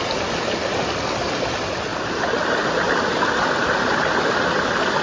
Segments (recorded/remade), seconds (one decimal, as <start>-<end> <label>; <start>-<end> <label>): 0.0-5.0 recorded